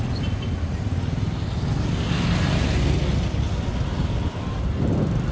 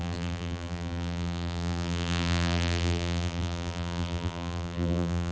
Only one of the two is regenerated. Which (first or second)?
second